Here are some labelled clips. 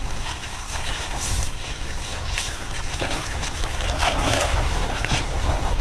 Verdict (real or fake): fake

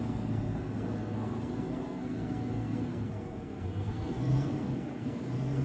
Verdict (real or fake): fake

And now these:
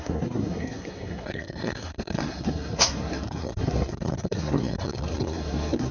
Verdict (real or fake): fake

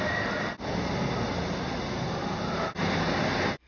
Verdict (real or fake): real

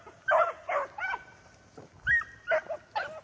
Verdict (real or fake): real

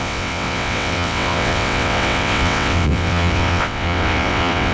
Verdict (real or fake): fake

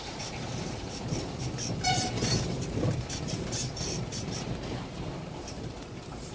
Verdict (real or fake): real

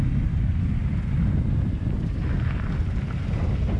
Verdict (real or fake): real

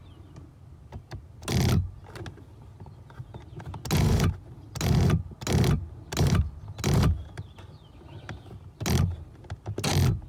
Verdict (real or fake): real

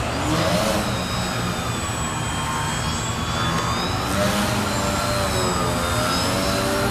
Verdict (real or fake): real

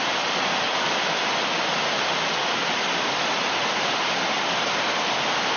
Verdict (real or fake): real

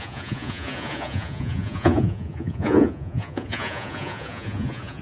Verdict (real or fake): fake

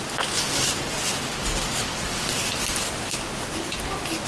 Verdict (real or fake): real